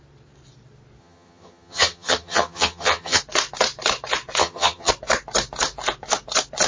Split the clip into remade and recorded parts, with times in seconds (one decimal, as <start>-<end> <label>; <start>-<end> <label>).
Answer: 0.0-1.0 recorded; 1.0-3.2 remade; 3.2-4.4 recorded; 4.4-4.9 remade; 4.9-6.7 recorded